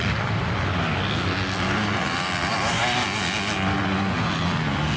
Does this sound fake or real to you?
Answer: real